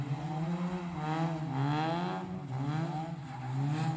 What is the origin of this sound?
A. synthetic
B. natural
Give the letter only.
B